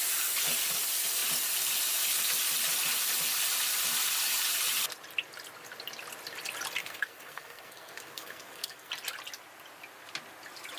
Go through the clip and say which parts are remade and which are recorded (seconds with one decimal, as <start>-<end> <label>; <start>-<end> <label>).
0.0-6.8 recorded; 6.8-8.9 remade; 8.9-10.8 recorded